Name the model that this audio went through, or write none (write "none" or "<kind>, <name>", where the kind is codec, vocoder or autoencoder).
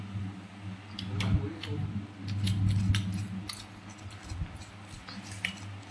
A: none